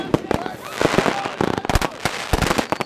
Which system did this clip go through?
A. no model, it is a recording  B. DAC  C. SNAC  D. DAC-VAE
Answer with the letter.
A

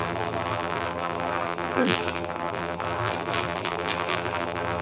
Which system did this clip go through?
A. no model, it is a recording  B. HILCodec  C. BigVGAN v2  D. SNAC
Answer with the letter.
C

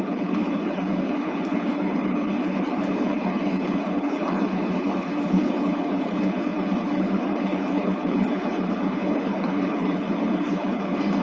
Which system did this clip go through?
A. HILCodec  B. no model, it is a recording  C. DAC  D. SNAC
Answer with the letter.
A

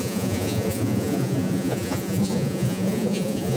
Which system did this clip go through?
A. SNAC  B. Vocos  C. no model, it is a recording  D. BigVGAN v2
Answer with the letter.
B